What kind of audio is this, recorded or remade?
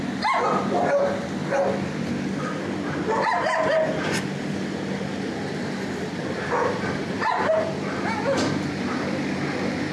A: recorded